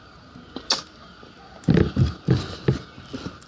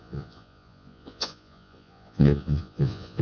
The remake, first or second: second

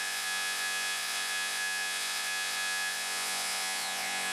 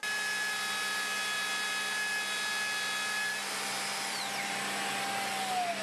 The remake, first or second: first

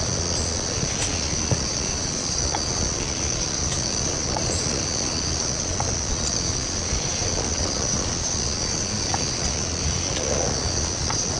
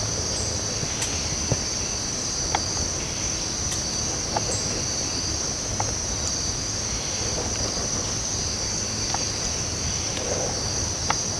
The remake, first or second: first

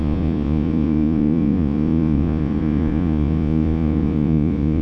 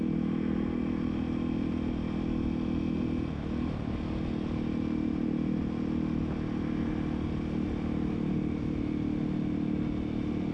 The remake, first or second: first